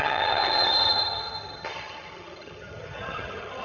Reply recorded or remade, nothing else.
remade